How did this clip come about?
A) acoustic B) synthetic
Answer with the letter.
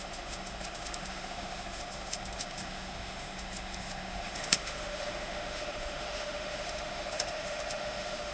B